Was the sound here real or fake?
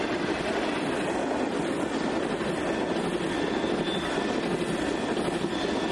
real